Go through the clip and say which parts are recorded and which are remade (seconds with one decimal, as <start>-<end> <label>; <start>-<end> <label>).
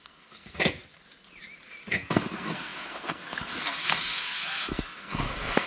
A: 0.0-0.8 remade; 0.8-1.9 recorded; 1.9-5.7 remade